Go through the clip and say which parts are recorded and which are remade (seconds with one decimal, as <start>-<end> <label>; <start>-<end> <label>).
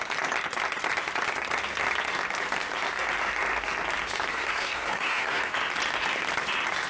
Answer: 0.0-4.3 recorded; 4.3-5.4 remade; 5.4-6.9 recorded